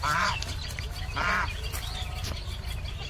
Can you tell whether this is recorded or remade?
recorded